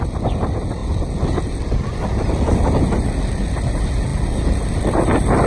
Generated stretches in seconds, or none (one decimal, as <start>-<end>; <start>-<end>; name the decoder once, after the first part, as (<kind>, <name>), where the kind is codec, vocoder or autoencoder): none